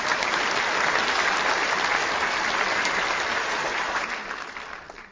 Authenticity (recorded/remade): recorded